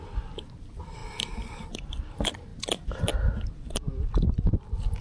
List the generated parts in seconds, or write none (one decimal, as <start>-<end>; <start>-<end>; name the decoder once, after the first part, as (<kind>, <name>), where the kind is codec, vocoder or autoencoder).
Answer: none